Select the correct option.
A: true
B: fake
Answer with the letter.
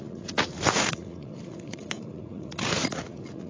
B